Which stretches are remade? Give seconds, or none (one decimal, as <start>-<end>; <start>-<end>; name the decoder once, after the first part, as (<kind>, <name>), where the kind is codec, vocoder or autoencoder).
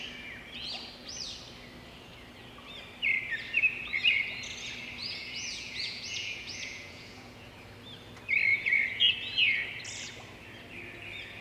5.0-7.5 (vocoder, Vocos); 8.5-9.1